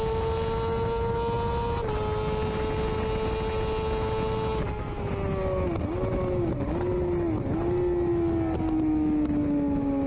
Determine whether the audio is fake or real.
real